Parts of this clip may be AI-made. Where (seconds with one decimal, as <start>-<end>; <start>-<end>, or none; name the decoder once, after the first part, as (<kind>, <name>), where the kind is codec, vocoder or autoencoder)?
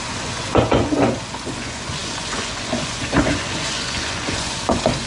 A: 0.0-5.1 (vocoder, Vocos)